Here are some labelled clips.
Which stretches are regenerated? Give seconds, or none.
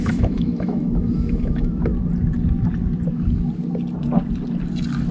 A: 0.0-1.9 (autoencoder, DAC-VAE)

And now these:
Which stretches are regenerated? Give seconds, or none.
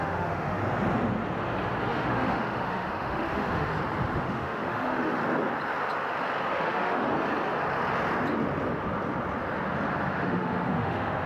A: 0.0-0.6 (autoencoder, DAC-VAE); 1.8-3.7; 4.2-5.2; 6.5-7.1; 10.2-11.3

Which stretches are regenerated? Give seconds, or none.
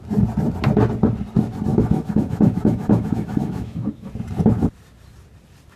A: 1.7-4.1 (autoencoder, DAC-VAE)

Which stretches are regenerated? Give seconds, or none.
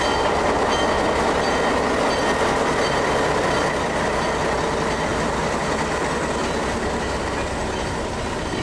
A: none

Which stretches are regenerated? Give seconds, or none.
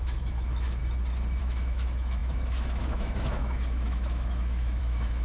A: 0.0-0.8 (autoencoder, DAC-VAE); 1.4-5.2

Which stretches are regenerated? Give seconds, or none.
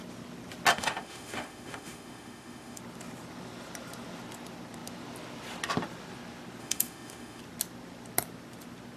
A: 0.7-2.8 (autoencoder, DAC-VAE); 6.6-7.4